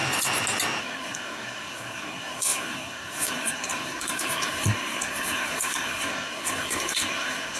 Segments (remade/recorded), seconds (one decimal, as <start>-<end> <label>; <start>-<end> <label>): 0.0-0.8 recorded; 0.8-7.6 remade